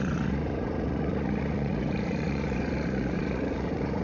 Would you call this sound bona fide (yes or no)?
no